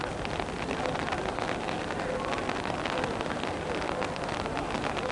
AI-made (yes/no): no